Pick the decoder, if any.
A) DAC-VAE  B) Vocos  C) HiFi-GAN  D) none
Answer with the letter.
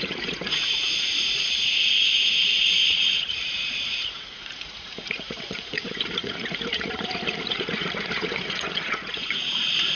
B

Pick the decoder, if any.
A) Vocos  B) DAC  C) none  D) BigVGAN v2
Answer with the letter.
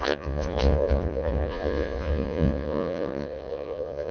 A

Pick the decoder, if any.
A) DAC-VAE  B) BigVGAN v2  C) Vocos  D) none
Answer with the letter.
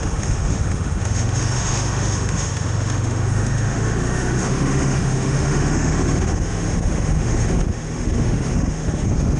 A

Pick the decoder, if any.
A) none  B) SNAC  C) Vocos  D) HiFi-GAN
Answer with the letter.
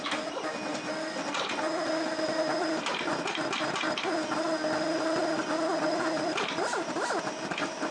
A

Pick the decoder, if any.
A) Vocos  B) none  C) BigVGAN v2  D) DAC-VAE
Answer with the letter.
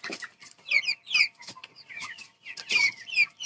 C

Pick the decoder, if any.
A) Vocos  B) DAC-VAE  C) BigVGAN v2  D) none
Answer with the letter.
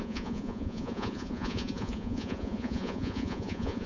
A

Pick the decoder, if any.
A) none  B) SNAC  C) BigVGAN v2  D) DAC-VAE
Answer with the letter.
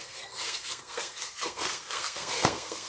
B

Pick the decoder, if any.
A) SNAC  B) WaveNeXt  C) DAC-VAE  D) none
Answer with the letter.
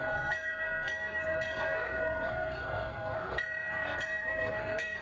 A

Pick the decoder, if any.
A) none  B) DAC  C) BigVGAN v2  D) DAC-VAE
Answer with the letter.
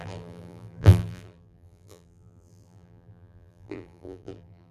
C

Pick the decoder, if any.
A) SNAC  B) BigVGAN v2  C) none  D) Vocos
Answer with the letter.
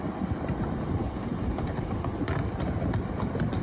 C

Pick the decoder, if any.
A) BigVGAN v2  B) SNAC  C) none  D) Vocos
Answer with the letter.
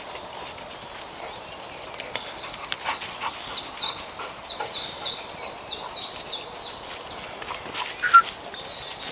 C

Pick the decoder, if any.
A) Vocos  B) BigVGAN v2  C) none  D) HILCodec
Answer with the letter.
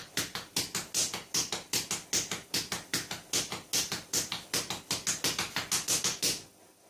C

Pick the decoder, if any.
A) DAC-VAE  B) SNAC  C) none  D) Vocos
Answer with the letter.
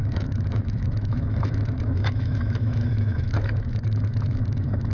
A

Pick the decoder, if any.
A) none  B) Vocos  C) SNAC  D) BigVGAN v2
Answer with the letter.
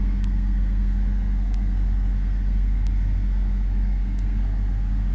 C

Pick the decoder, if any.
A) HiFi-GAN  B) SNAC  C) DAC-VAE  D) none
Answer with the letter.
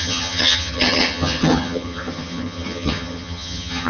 A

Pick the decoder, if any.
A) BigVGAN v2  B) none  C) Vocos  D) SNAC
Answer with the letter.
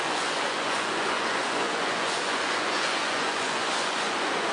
C